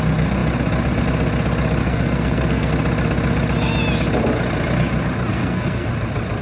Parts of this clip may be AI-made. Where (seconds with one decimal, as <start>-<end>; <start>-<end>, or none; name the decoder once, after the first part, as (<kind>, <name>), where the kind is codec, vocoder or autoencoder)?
1.8-2.7 (codec, SNAC); 5.3-5.9